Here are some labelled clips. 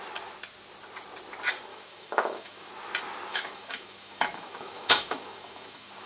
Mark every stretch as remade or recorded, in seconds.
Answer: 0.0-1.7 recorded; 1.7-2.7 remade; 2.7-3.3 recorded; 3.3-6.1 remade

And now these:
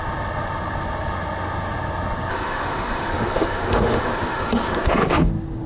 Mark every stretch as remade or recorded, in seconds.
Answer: 0.0-2.3 recorded; 2.3-5.3 remade; 5.3-5.7 recorded

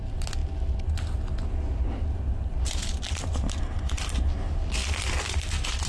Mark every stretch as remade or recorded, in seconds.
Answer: 0.0-5.9 recorded

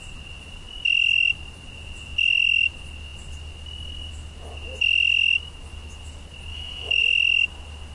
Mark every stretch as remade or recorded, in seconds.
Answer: 0.0-6.5 recorded; 6.5-7.0 remade; 7.0-7.9 recorded